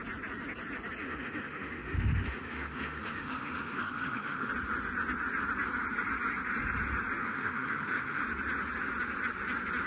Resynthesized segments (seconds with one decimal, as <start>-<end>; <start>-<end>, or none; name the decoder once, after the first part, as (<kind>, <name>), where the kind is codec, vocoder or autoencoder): 1.0-4.5 (autoencoder, DAC-VAE); 7.2-8.2